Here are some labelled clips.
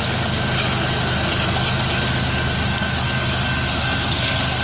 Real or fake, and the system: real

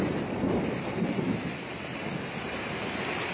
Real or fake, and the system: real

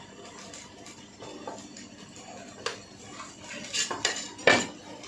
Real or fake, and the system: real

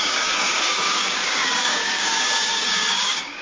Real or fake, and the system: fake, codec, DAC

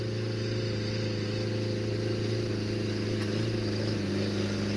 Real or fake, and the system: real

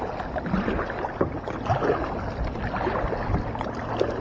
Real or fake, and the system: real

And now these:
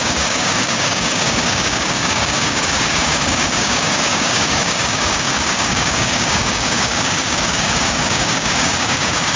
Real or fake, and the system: fake, codec, DAC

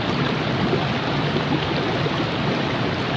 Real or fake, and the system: real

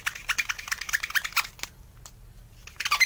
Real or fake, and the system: real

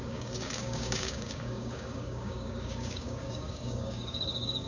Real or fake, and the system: fake, codec, DAC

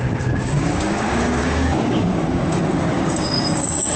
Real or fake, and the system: fake, codec, DAC